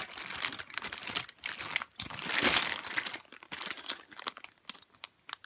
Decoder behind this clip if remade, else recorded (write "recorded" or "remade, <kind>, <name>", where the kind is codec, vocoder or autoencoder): recorded